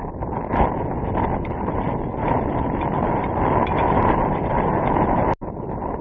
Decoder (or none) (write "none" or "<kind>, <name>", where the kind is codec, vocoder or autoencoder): none